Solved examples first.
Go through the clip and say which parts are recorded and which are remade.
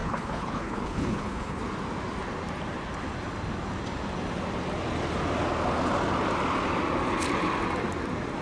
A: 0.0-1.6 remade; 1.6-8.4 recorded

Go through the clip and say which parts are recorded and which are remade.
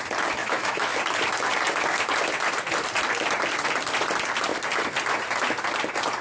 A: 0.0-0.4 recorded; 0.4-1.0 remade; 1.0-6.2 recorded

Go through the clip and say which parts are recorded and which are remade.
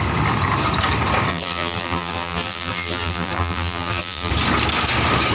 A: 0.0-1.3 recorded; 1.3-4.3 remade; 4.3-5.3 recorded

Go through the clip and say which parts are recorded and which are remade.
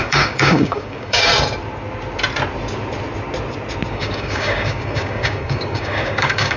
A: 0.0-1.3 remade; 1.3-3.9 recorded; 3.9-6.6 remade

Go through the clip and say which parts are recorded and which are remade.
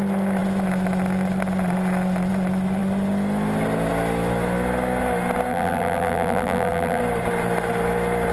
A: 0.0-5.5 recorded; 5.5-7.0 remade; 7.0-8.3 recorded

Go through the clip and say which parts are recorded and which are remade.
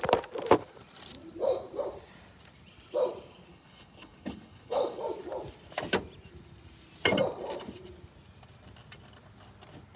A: 0.0-3.5 recorded; 3.5-5.0 remade; 5.0-10.0 recorded